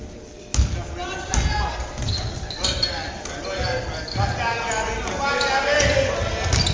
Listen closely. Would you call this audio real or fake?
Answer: real